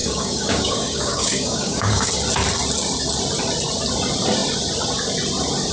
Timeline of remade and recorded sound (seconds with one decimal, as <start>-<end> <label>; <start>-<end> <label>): 0.0-2.1 remade; 2.1-5.7 recorded